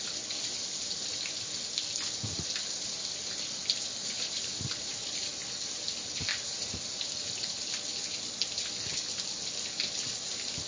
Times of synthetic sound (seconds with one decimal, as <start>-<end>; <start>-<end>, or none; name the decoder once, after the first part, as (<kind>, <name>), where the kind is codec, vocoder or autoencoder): 4.0-5.4 (vocoder, BigVGAN v2); 6.3-7.7